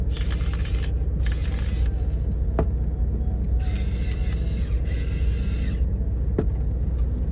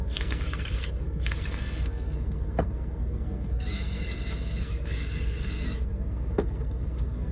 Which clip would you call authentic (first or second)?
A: first